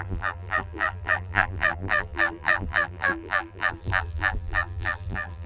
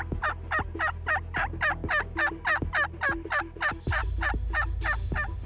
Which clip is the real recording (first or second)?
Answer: second